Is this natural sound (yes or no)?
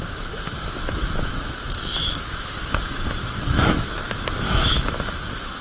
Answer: no